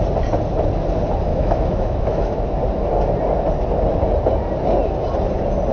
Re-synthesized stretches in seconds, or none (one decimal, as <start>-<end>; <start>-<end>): 1.3-2.5